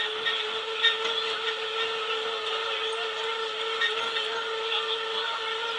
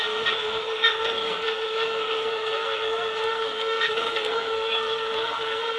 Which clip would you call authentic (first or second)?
first